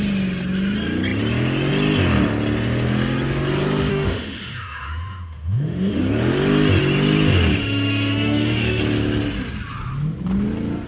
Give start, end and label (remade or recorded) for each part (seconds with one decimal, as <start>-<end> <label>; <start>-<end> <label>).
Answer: 0.0-3.9 recorded; 3.9-6.0 remade; 6.0-7.6 recorded; 7.6-8.8 remade; 8.8-10.9 recorded